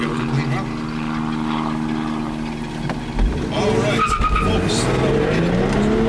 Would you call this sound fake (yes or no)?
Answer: no